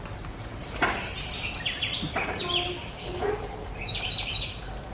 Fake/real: real